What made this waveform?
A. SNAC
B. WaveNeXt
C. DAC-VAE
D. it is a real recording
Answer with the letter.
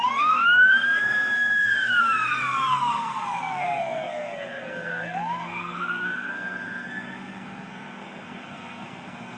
A